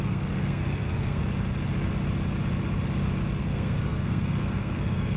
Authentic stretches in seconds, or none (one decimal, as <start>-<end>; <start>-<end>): 1.2-3.4

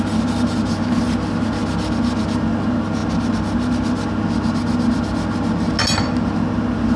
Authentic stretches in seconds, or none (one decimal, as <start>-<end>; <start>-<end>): 0.0-7.0